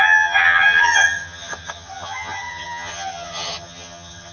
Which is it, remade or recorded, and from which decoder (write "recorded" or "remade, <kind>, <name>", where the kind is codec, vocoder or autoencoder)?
remade, vocoder, HiFi-GAN